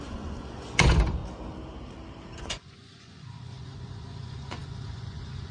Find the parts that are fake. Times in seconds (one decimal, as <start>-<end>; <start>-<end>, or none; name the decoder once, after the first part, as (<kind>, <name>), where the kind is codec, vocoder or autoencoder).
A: 0.0-1.2 (vocoder, Vocos); 2.4-5.5